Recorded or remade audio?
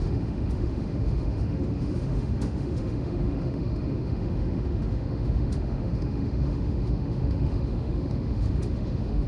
remade